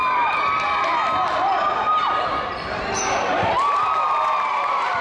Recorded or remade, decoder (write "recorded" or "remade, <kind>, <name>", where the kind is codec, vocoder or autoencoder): recorded